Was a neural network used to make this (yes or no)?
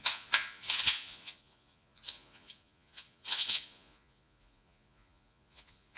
yes